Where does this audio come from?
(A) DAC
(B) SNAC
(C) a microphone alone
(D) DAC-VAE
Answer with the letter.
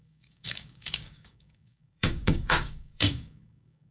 A